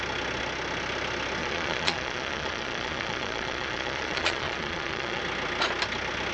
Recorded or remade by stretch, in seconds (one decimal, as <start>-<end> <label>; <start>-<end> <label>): 0.0-1.4 recorded; 1.4-5.2 remade; 5.2-6.3 recorded